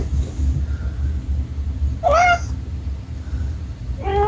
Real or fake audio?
real